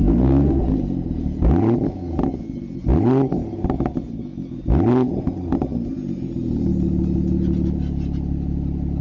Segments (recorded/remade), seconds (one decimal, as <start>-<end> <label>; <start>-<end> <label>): 0.0-0.6 remade; 0.6-9.0 recorded